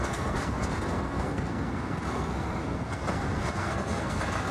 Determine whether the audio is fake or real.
fake